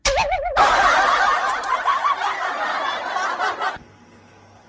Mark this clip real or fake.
real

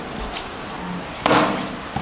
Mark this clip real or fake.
real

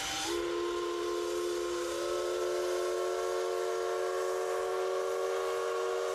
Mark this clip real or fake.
real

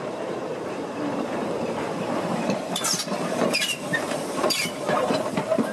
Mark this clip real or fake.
fake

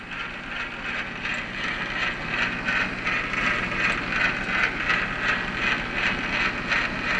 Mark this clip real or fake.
real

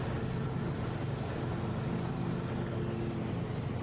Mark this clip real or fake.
real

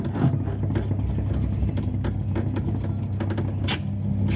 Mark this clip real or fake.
real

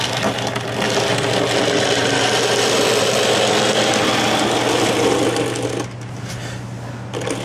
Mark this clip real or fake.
real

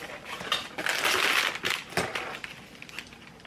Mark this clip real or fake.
real